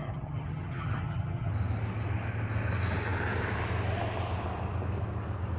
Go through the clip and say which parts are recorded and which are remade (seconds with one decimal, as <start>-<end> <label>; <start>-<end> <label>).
0.0-1.5 remade; 1.5-5.6 recorded